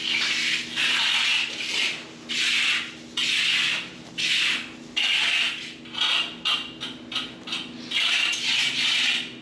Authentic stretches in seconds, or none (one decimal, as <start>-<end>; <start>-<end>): 0.0-3.5; 4.1-9.4